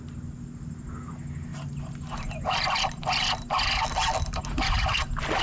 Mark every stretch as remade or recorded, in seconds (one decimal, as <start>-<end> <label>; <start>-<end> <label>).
0.0-5.4 recorded